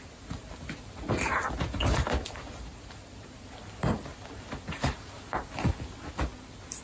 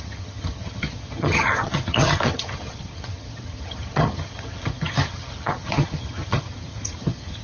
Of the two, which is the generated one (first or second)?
second